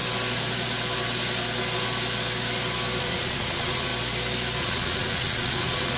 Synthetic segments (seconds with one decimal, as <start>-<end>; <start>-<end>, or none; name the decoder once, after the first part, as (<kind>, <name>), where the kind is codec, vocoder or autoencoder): 3.0-3.9 (vocoder, Vocos); 4.6-6.0